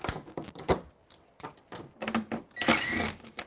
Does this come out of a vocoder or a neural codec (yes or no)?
no